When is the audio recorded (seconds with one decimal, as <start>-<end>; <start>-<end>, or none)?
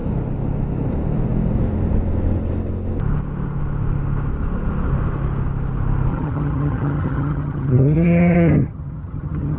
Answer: 0.0-6.1